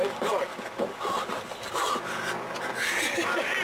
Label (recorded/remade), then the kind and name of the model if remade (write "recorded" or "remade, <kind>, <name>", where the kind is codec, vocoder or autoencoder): recorded